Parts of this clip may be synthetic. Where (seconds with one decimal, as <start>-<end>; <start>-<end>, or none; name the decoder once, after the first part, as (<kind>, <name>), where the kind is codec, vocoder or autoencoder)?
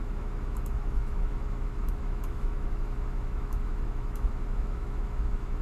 0.0-5.6 (autoencoder, DAC-VAE)